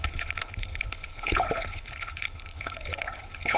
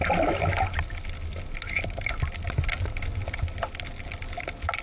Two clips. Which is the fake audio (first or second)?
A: first